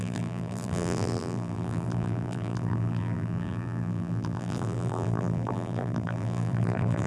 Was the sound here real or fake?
fake